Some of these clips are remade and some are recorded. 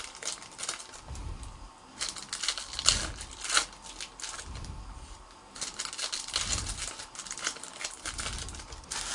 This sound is recorded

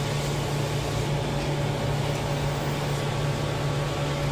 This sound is recorded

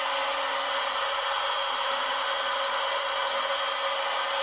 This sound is recorded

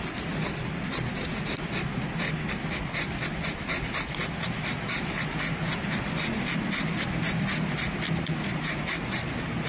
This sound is recorded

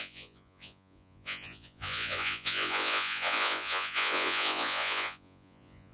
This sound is remade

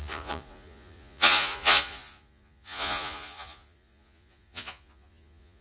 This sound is remade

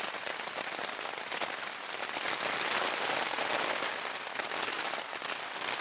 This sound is recorded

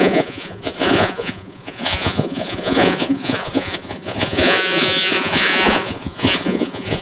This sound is remade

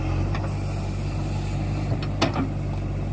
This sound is recorded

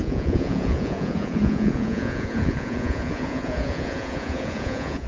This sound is remade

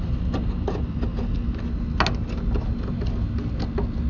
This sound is recorded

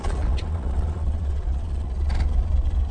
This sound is remade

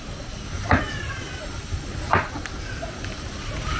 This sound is recorded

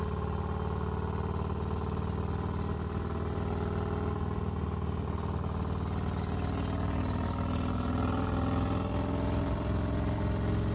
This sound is recorded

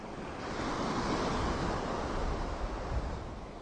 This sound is recorded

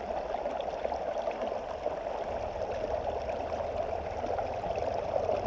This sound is recorded